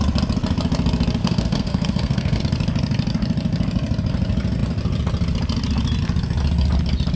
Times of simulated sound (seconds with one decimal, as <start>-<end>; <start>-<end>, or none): 1.2-2.4